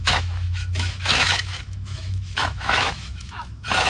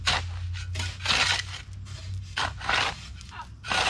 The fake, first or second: first